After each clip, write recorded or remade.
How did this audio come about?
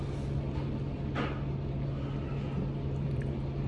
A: recorded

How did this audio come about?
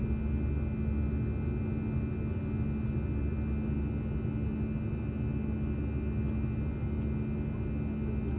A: recorded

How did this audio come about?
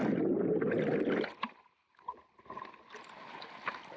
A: recorded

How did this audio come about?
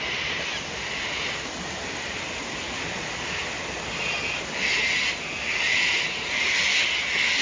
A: recorded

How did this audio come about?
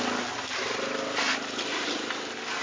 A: recorded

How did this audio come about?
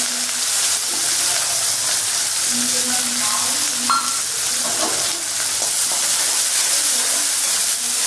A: recorded